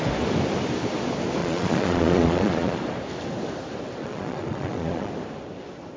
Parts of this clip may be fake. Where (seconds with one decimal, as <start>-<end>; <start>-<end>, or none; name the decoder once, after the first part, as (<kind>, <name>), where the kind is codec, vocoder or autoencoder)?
1.4-2.8 (vocoder, Vocos); 4.0-5.1